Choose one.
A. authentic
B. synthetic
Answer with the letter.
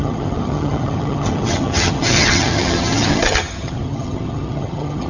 B